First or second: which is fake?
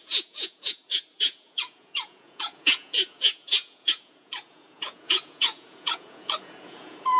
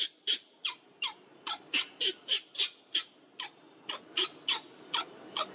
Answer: first